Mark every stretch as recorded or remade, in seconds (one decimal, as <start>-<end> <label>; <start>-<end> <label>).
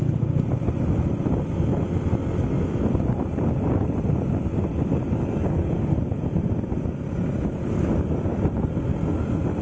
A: 0.0-5.4 recorded; 5.4-5.9 remade; 5.9-9.6 recorded